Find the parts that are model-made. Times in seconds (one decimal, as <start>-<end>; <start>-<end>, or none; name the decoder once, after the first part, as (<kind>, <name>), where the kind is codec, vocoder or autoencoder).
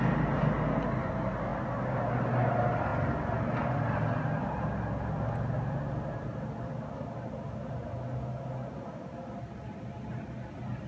none